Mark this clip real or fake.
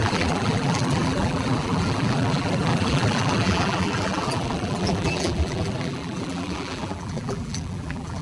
fake